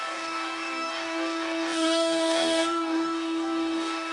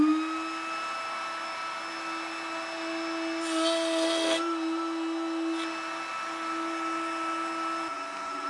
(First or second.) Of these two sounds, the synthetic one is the first